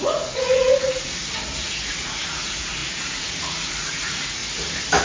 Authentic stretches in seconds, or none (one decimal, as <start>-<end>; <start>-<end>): 1.2-1.9; 4.4-5.0